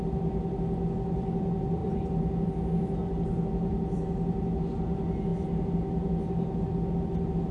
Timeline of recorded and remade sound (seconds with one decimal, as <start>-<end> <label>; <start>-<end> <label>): 0.0-7.5 recorded

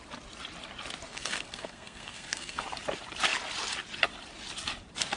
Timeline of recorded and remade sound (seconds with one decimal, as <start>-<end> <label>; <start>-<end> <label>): 0.0-1.1 recorded; 1.1-2.6 remade; 2.6-5.2 recorded

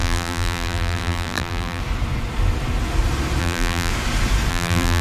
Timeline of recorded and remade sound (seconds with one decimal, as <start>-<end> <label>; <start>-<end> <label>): 0.0-1.8 remade; 1.8-3.4 recorded; 3.4-3.9 remade; 3.9-4.5 recorded; 4.5-5.0 remade

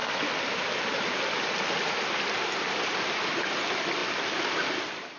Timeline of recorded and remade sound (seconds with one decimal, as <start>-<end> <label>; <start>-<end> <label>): 0.0-5.2 recorded

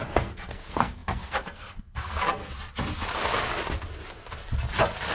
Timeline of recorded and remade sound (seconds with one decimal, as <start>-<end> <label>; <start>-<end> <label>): 0.0-2.4 remade; 2.4-5.1 recorded

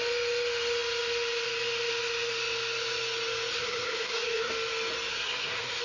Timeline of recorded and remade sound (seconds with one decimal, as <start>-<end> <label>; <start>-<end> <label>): 0.0-3.5 recorded; 3.5-4.5 remade; 4.5-5.1 recorded; 5.1-5.8 remade

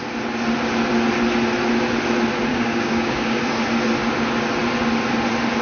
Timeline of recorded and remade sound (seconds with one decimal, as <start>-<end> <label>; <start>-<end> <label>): 0.0-2.5 recorded; 2.5-3.4 remade; 3.4-5.6 recorded